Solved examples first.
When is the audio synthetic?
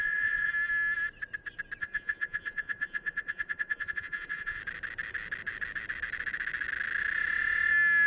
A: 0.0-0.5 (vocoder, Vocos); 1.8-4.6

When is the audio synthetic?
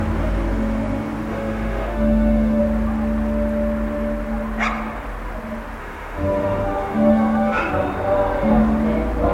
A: 1.3-2.6 (autoencoder, DAC-VAE); 5.8-7.7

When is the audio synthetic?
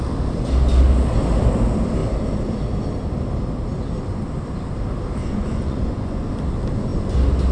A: 5.2-6.3 (vocoder, Vocos)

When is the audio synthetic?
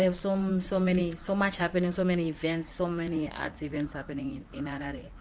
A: 0.0-1.0 (vocoder, Vocos); 1.6-5.2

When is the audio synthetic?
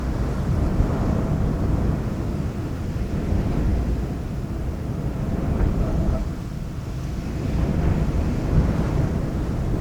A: 0.0-0.7 (vocoder, BigVGAN v2); 2.1-3.7; 4.4-6.2